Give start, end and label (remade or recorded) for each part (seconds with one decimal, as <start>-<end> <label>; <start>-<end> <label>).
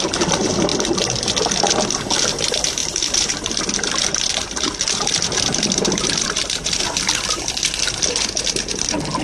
0.0-0.7 remade; 0.7-1.6 recorded; 1.6-9.2 remade